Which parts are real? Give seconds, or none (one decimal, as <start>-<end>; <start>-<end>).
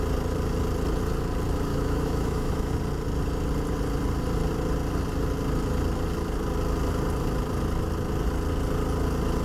0.0-1.7; 2.7-9.4